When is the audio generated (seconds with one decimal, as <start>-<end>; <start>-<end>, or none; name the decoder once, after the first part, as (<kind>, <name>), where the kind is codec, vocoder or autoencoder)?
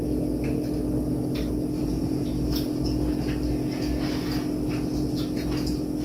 1.8-2.3 (vocoder, Vocos)